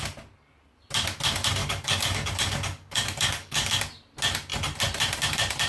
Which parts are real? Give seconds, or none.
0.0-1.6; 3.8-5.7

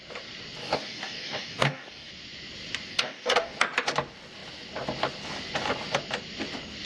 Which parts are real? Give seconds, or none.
0.0-0.6; 2.1-2.9; 3.6-6.9

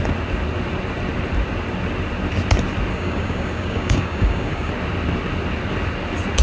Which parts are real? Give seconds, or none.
0.0-2.9; 4.7-6.4

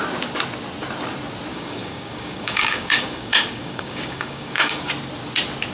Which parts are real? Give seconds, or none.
0.0-1.5; 4.9-5.7